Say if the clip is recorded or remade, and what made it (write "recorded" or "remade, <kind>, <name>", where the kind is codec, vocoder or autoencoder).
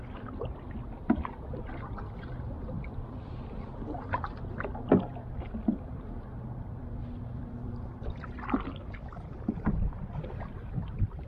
remade, vocoder, BigVGAN v2